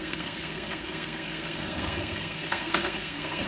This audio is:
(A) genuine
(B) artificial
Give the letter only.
B